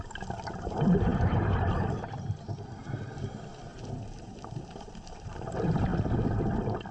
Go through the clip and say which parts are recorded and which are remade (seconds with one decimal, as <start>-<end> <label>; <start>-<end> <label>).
0.0-5.9 remade; 5.9-6.9 recorded